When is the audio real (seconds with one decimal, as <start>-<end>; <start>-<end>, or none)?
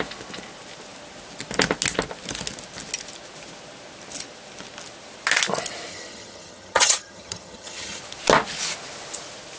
0.0-5.9; 8.0-9.6